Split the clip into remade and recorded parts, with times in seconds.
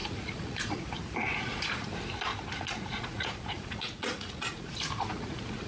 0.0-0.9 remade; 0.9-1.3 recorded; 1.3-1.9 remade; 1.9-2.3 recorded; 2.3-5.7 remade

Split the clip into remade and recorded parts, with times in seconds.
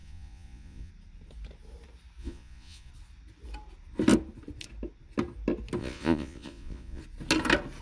0.0-0.9 remade; 0.9-2.2 recorded; 2.2-2.9 remade; 2.9-5.8 recorded; 5.8-7.0 remade; 7.0-7.8 recorded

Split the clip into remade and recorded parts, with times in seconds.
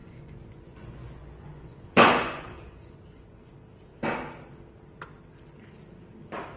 0.0-3.5 remade; 3.5-6.6 recorded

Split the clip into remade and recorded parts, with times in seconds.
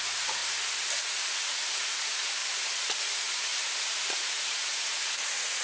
0.0-0.4 remade; 0.4-1.0 recorded; 1.0-2.4 remade; 2.4-3.0 recorded; 3.0-3.5 remade; 3.5-4.2 recorded; 4.2-5.6 remade